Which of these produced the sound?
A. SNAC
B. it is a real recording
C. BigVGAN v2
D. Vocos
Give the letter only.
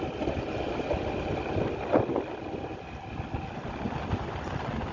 B